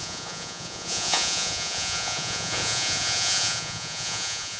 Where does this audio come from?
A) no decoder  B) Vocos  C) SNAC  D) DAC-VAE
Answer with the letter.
B